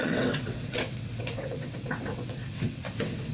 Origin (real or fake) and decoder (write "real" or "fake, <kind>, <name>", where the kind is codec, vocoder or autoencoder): fake, vocoder, WaveNeXt